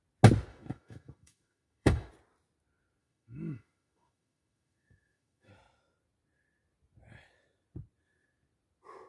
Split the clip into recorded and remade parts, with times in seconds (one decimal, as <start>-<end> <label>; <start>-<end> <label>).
0.0-0.5 recorded; 0.5-2.1 remade; 2.1-3.0 recorded; 3.0-5.5 remade; 5.5-9.1 recorded